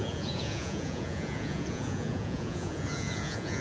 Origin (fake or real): fake